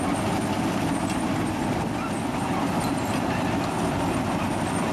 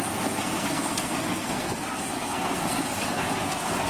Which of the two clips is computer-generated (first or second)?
second